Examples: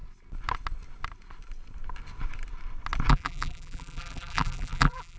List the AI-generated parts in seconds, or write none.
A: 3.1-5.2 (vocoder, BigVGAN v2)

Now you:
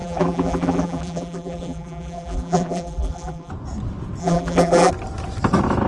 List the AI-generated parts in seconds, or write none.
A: 0.0-3.5 (vocoder, BigVGAN v2); 4.2-4.9

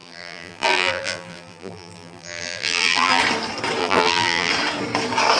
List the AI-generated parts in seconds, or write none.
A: 0.0-3.2 (vocoder, BigVGAN v2); 3.8-4.5